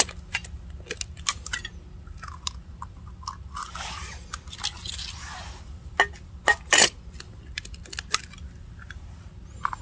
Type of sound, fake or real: real